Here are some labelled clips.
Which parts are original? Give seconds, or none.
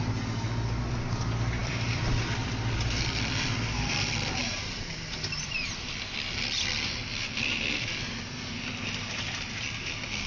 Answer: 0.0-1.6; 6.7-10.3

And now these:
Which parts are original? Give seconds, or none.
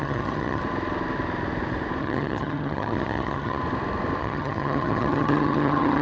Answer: 0.6-2.0; 3.6-4.2